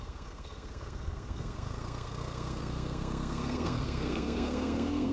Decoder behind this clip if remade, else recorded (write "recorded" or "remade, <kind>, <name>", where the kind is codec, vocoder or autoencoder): remade, codec, SNAC